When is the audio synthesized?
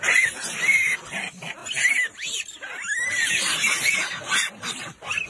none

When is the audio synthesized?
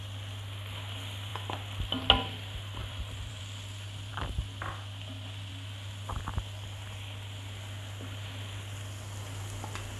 2.8-3.4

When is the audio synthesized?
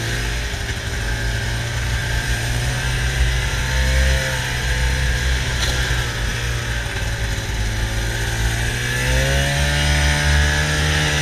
2.0-3.6; 4.6-5.6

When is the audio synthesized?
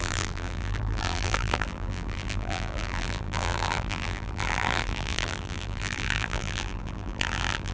0.0-7.7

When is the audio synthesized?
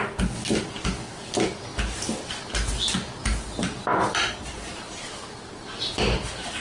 3.9-5.2